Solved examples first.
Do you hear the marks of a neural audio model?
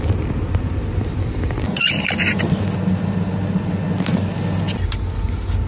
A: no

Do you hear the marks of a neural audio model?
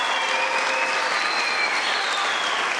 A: no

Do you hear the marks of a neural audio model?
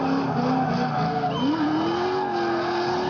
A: no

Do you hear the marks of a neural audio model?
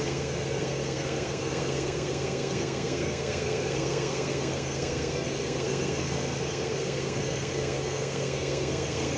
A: yes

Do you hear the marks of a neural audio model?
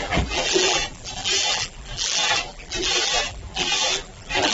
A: yes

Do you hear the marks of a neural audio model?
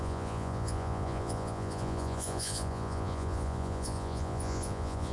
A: yes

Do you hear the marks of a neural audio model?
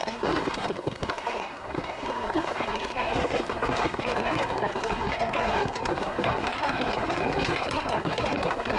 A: yes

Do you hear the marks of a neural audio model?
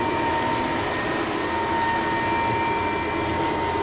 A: no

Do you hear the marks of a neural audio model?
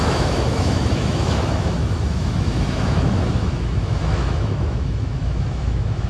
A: yes